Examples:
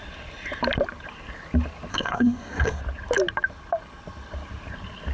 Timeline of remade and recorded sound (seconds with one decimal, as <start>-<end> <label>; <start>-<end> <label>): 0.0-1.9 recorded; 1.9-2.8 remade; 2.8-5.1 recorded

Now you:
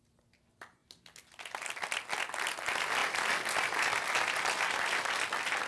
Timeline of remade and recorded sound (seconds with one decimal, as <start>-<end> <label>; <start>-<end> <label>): 0.0-5.7 recorded

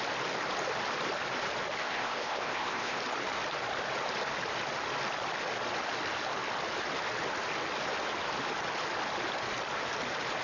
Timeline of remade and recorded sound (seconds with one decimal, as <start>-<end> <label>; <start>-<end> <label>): 0.0-1.8 recorded; 1.8-3.0 remade; 3.0-10.4 recorded